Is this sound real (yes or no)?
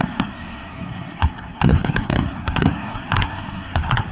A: no